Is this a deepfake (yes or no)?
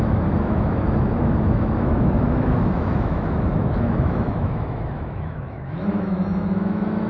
yes